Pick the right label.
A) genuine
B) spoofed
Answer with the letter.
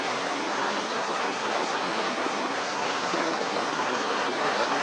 B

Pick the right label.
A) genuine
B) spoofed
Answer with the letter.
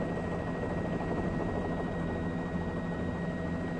A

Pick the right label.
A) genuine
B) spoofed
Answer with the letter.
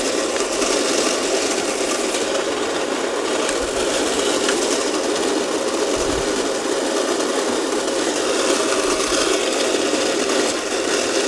A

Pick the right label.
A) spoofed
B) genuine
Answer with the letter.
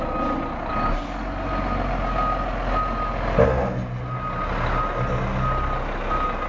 B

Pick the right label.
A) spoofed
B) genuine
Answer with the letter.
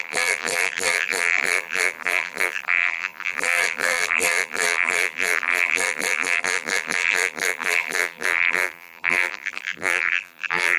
A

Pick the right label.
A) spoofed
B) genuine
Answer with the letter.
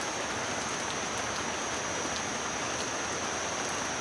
B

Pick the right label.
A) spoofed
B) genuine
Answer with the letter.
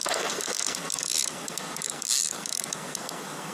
A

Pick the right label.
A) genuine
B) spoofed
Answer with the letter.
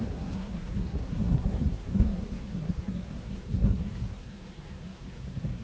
B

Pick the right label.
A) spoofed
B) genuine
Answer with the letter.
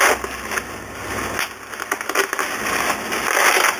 B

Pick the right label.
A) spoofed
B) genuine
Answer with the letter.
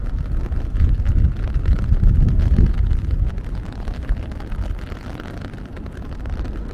B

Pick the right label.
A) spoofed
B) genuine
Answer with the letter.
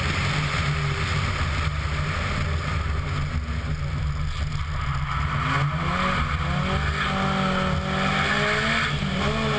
B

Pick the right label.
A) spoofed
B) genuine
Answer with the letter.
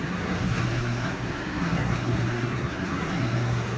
A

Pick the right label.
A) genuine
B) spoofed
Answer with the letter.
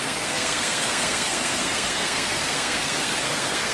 B